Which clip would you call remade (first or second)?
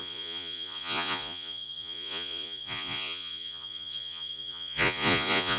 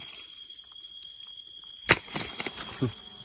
first